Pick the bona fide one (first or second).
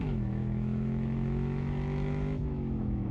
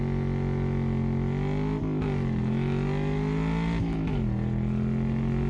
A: second